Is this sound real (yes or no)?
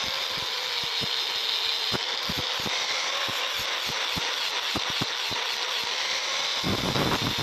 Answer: yes